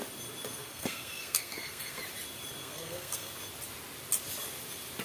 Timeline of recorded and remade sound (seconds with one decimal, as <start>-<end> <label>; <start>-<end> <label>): 0.0-0.6 recorded; 0.6-2.0 remade; 2.0-2.6 recorded; 2.6-3.3 remade; 3.3-5.0 recorded